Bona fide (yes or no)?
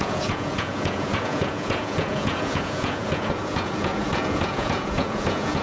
no